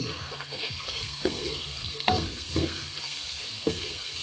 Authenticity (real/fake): fake